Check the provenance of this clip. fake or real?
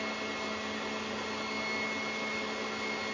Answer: real